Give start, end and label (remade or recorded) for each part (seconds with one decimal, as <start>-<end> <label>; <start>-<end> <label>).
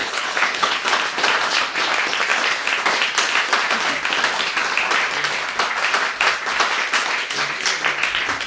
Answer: 0.0-0.8 remade; 0.8-8.5 recorded